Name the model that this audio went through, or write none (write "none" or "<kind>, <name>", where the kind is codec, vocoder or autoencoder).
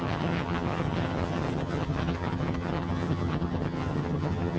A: vocoder, HiFi-GAN